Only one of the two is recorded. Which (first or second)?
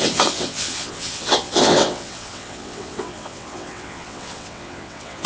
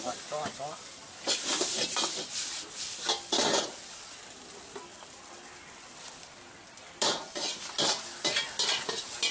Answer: second